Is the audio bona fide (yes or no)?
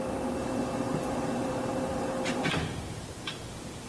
no